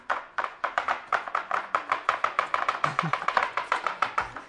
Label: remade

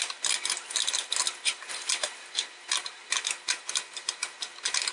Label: recorded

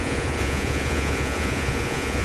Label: remade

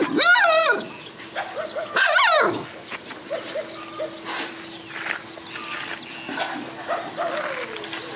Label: recorded